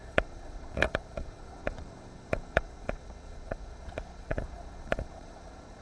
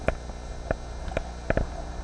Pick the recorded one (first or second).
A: second